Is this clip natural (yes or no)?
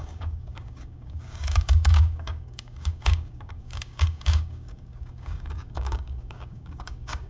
no